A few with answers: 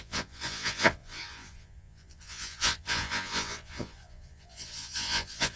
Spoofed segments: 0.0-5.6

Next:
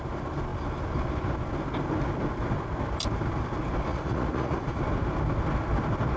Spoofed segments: 3.9-4.8

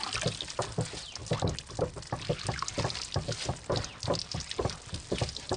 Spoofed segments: none

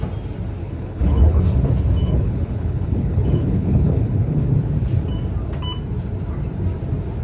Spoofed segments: 0.6-1.4; 2.0-4.5

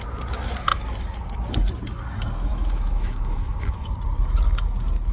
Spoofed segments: 2.5-3.9

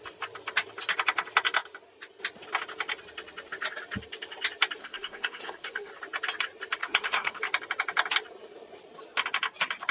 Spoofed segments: 4.8-5.9; 6.8-7.4

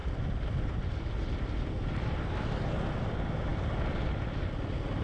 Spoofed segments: none